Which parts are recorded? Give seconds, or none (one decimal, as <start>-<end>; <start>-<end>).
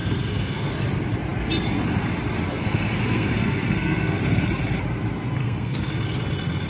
0.7-2.4; 4.2-5.4; 5.9-6.7